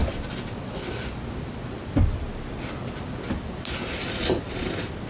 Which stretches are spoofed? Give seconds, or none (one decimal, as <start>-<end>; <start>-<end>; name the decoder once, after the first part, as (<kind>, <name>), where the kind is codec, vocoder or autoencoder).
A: none